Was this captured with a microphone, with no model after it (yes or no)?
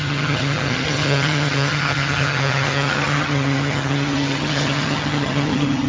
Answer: no